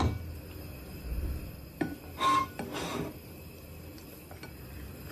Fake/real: real